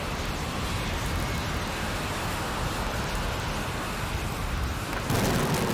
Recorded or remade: recorded